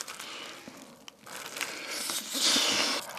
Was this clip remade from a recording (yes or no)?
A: no